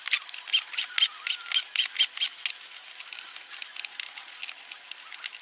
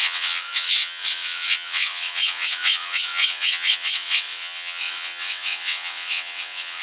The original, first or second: first